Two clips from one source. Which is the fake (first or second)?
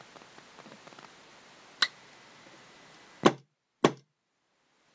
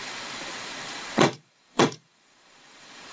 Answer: second